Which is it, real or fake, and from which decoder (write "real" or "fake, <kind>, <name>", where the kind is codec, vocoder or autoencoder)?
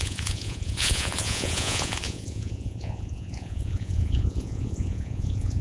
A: fake, vocoder, Vocos